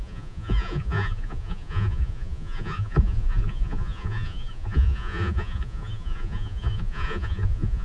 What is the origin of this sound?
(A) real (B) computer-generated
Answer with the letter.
B